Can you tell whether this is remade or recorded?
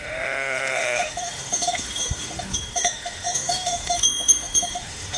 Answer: remade